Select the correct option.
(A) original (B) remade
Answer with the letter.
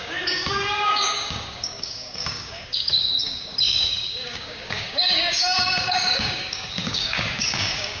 B